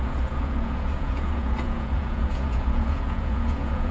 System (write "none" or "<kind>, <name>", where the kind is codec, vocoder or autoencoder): vocoder, Vocos